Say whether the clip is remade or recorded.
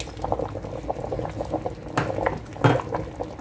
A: recorded